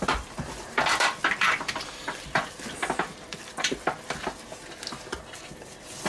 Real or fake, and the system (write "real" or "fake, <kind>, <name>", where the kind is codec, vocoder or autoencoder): fake, vocoder, BigVGAN v2